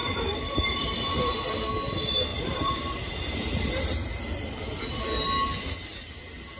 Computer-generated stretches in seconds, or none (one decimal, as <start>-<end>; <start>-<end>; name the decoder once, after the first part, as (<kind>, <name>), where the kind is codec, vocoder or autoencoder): 0.0-1.7 (vocoder, BigVGAN v2); 2.3-5.0